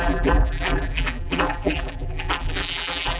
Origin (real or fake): fake